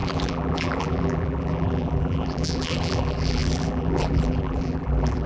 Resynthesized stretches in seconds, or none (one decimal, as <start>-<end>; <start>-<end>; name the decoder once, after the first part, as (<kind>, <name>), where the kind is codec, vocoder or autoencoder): 0.0-5.3 (vocoder, BigVGAN v2)